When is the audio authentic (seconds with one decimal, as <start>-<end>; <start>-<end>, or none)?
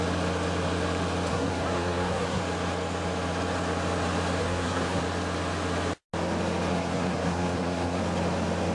0.0-1.3; 2.4-4.4; 5.0-6.7; 8.0-8.7